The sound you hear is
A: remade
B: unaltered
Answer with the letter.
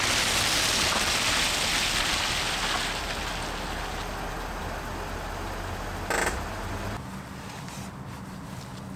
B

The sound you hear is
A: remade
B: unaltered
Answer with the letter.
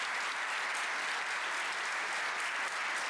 B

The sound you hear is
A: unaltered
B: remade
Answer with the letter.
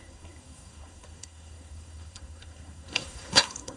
B